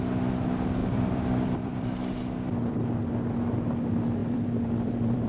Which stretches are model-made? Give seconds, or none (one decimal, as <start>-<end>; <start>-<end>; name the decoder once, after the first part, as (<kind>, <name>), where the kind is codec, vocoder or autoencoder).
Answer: 0.8-2.2 (vocoder, BigVGAN v2); 4.2-5.3